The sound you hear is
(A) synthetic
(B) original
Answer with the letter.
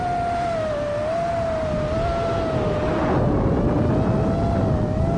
B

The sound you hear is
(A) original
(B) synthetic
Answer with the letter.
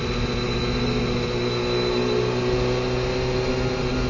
A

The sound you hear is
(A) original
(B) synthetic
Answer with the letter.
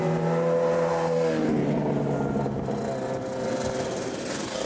A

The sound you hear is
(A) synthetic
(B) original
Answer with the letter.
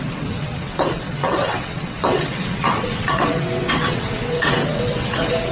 A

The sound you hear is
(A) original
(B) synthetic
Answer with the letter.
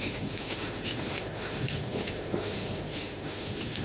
B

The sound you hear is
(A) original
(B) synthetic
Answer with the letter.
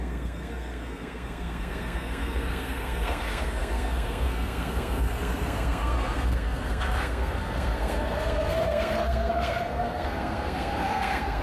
B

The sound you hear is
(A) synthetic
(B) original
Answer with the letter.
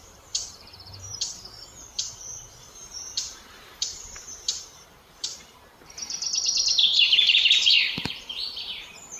A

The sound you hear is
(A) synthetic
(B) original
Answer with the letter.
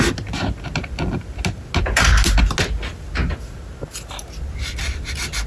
B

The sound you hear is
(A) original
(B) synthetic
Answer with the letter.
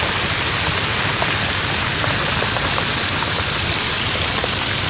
B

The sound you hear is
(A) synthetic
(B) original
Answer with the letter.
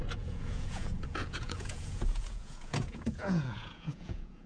A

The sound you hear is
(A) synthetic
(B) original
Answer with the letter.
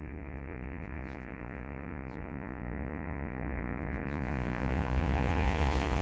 A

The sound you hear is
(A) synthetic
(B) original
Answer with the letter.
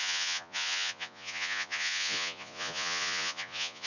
A